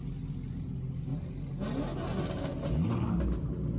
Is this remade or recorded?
recorded